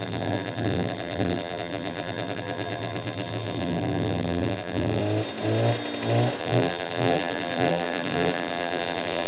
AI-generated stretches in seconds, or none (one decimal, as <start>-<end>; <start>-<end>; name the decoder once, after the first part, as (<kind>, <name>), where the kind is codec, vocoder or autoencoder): 0.0-5.0 (vocoder, BigVGAN v2); 6.4-9.3